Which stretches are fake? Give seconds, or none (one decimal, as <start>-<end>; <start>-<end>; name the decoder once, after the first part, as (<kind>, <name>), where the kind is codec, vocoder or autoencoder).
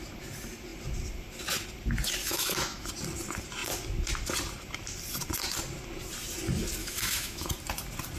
2.2-2.9 (autoencoder, DAC-VAE); 6.8-7.5